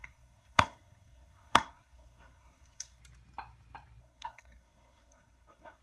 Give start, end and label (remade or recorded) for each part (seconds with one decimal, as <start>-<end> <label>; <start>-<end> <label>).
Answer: 0.0-3.0 remade; 3.0-4.0 recorded; 4.0-5.8 remade